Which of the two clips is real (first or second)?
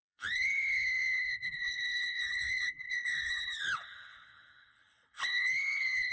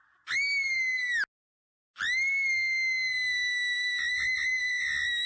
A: second